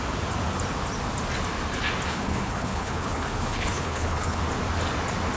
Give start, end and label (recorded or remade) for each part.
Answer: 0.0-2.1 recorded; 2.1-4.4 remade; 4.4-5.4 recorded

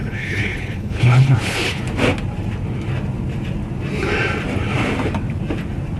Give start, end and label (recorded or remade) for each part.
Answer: 0.0-1.8 remade; 1.8-6.0 recorded

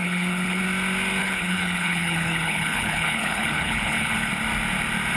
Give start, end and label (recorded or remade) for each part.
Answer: 0.0-0.6 remade; 0.6-1.2 recorded; 1.2-4.3 remade; 4.3-5.2 recorded

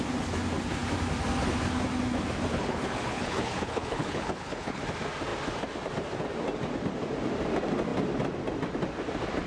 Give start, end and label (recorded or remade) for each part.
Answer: 0.0-2.5 recorded; 2.5-4.8 remade; 4.8-9.5 recorded